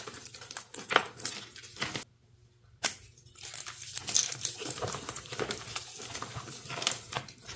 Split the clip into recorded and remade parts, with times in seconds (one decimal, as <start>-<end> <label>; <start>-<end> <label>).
0.0-1.0 remade; 1.0-4.3 recorded; 4.3-7.6 remade

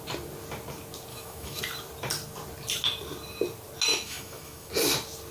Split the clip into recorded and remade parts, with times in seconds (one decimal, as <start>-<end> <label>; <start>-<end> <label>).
0.0-1.1 recorded; 1.1-1.6 remade; 1.6-3.9 recorded; 3.9-4.7 remade; 4.7-5.3 recorded

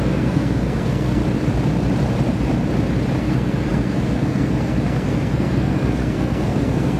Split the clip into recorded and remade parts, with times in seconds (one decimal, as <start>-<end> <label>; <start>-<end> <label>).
0.0-1.2 remade; 1.2-3.2 recorded; 3.2-7.0 remade